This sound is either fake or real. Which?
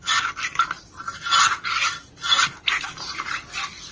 real